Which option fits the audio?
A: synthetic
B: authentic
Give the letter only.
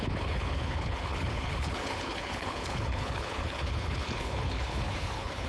A